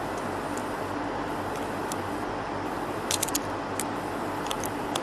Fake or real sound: real